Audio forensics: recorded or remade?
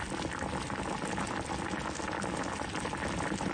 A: recorded